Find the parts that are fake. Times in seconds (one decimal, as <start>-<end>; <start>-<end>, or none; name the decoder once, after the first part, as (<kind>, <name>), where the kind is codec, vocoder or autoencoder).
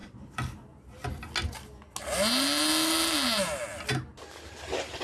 none